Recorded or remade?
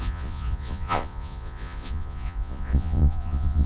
remade